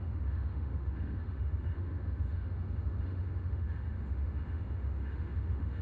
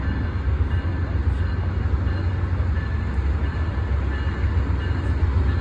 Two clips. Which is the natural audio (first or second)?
second